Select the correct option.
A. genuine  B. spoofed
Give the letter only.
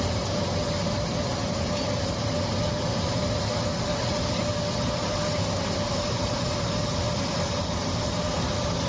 A